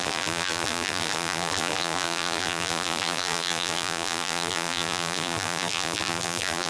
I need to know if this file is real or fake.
fake